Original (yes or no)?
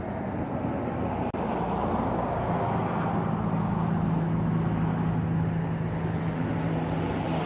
yes